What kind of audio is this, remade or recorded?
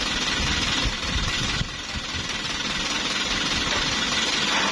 recorded